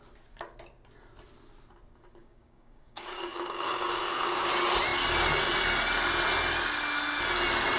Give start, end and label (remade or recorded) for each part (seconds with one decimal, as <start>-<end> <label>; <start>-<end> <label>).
0.0-2.2 recorded; 2.2-4.5 remade; 4.5-7.8 recorded